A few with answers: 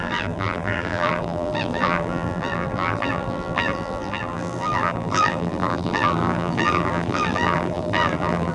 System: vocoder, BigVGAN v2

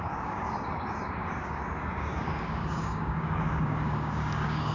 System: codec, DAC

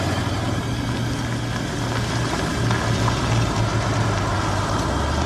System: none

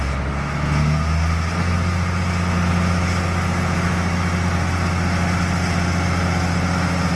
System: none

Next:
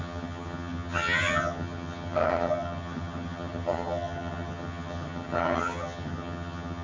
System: vocoder, HiFi-GAN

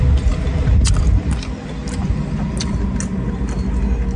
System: none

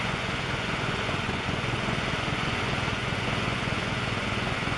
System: vocoder, Vocos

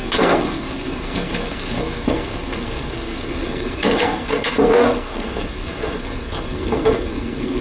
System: codec, SNAC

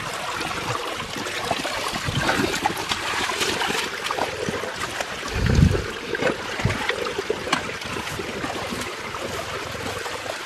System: none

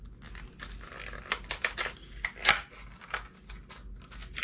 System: none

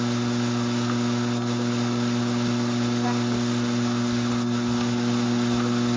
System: none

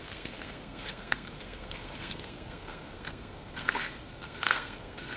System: codec, SNAC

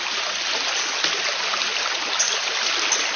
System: none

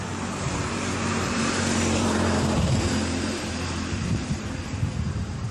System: vocoder, BigVGAN v2